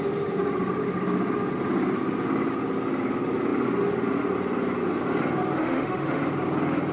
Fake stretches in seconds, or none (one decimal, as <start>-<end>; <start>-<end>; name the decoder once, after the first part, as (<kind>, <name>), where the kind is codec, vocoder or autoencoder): 5.6-6.2 (autoencoder, DAC-VAE)

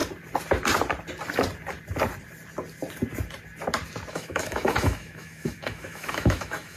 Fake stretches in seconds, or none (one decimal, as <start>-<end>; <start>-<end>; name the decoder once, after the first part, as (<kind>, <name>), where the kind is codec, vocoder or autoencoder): 4.1-6.8 (autoencoder, DAC-VAE)

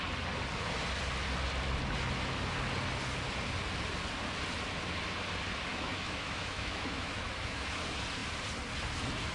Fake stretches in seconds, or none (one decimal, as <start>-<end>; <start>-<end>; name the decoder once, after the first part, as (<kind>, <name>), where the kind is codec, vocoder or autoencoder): 5.7-7.8 (autoencoder, DAC-VAE)

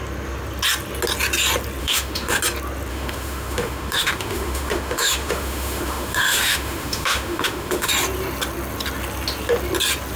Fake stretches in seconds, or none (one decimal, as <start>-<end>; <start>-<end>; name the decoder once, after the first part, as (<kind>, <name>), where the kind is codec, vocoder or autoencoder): 1.8-2.4 (autoencoder, DAC-VAE); 2.9-7.9